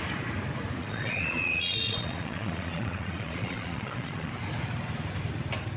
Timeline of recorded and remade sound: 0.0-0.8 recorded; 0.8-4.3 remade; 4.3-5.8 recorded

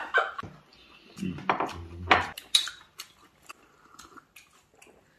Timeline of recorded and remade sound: 0.0-5.2 recorded